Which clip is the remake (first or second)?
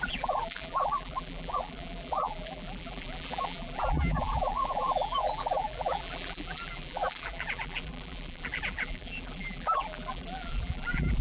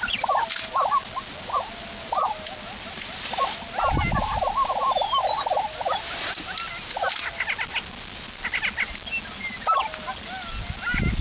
first